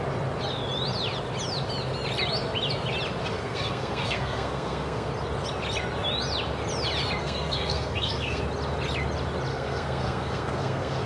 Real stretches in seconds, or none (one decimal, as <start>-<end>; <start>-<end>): 0.0-3.2; 5.1-7.2; 8.4-9.5